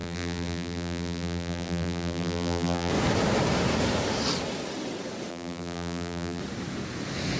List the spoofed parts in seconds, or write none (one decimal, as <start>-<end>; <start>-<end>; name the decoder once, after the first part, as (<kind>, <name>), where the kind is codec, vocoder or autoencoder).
0.0-2.9 (vocoder, BigVGAN v2); 5.3-6.4